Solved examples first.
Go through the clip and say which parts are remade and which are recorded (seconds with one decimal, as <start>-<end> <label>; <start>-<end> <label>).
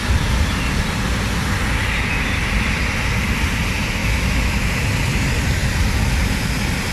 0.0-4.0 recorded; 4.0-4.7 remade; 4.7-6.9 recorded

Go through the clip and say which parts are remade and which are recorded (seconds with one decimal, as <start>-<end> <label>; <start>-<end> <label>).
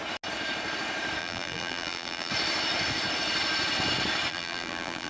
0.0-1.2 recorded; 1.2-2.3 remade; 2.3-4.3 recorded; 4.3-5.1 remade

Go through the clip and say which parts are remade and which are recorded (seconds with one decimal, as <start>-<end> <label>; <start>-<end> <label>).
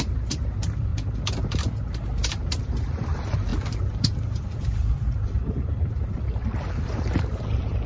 0.0-0.9 remade; 0.9-2.6 recorded; 2.6-7.9 remade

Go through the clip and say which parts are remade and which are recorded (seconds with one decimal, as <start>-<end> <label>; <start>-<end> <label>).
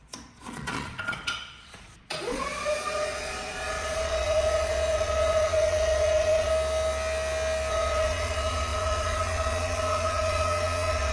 0.0-6.5 remade; 6.5-7.7 recorded; 7.7-11.1 remade